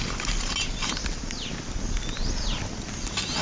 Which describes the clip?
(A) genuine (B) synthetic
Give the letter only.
A